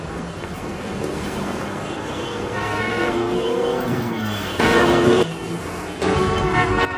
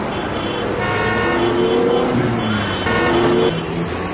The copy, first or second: first